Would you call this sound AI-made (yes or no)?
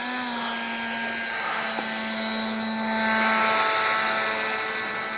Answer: no